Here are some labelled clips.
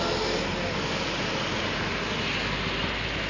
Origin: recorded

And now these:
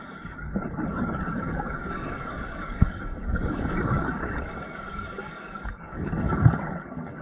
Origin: remade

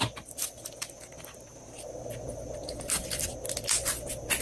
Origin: recorded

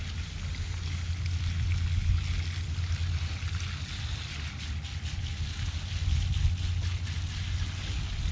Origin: recorded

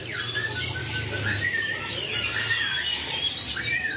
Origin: recorded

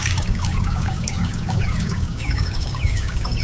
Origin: remade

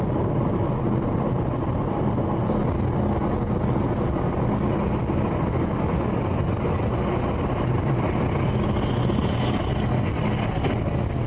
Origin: recorded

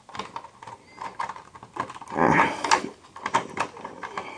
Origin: recorded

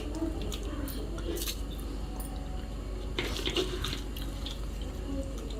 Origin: recorded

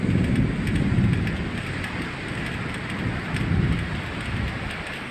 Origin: recorded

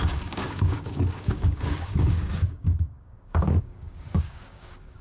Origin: remade